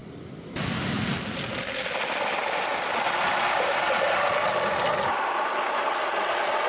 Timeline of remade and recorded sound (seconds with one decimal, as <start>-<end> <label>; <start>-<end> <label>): 0.0-6.7 recorded